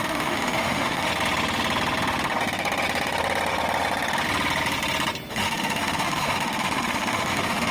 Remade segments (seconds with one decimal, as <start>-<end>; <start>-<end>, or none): 0.0-1.1; 5.3-7.7